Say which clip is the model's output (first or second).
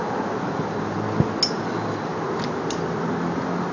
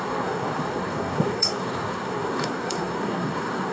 second